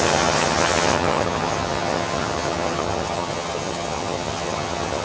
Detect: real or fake fake